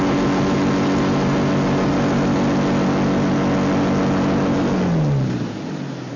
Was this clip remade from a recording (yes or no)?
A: no